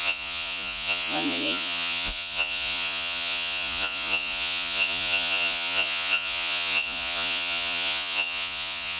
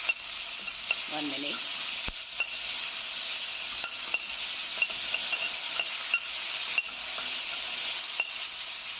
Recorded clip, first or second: second